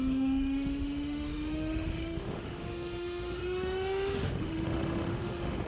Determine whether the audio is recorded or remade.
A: remade